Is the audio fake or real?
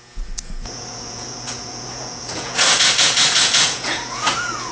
fake